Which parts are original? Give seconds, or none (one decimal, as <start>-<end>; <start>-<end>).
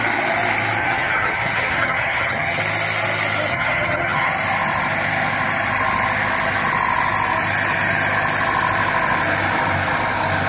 0.0-0.8; 2.6-3.5; 4.3-10.5